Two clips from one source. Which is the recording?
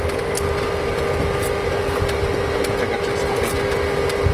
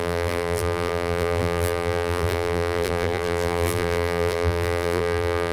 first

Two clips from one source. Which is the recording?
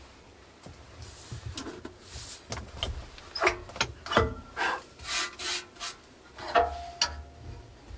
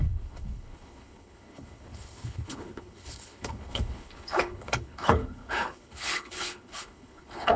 first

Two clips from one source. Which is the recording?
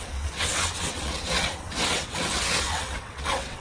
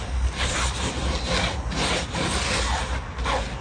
second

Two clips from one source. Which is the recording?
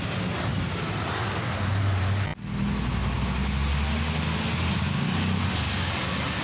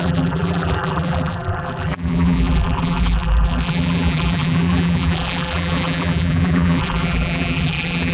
first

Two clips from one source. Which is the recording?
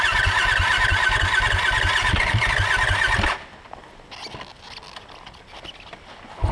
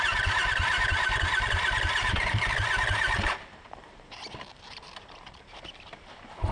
first